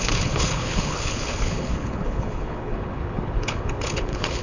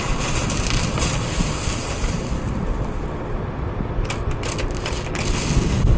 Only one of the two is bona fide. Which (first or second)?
second